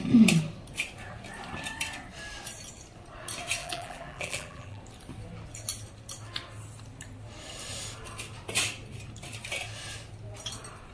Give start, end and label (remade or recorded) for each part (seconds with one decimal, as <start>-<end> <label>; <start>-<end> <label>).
0.0-3.6 recorded; 3.6-4.8 remade; 4.8-10.9 recorded